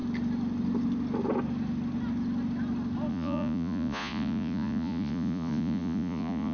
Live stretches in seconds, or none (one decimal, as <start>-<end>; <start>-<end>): 0.0-3.1